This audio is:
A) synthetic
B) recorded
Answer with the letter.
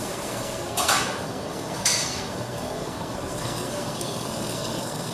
A